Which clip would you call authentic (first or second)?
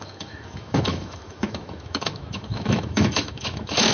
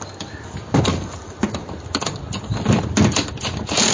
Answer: second